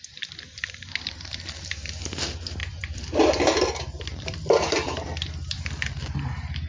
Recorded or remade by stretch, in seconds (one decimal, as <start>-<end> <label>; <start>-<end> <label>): 0.0-2.6 recorded; 2.6-6.2 remade; 6.2-6.7 recorded